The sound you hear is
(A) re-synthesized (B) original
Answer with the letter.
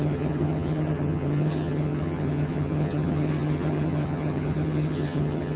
A